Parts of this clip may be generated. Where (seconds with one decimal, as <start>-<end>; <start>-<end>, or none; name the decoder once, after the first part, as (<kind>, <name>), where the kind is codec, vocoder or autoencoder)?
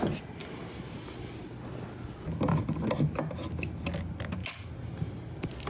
none